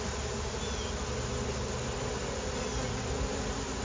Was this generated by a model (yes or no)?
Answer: no